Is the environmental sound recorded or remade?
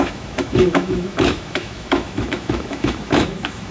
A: remade